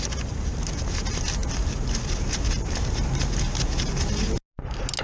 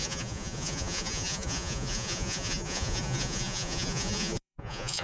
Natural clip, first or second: first